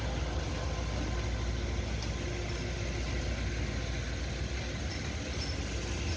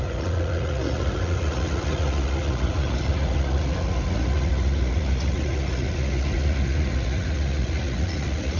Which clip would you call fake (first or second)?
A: second